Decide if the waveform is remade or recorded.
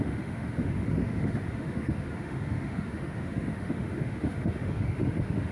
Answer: remade